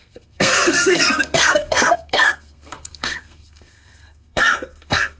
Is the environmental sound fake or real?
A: fake